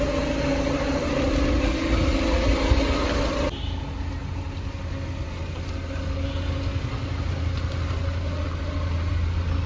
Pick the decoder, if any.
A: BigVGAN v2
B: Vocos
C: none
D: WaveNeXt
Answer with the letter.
C